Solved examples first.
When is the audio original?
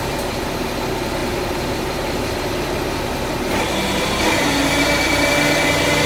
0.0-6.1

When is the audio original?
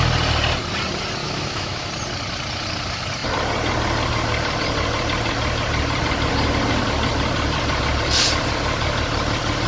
0.0-1.2; 1.9-9.7